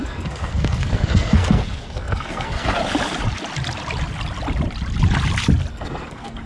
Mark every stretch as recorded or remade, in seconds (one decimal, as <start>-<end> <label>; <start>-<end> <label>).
0.0-2.8 remade; 2.8-5.7 recorded; 5.7-6.5 remade